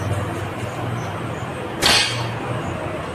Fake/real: real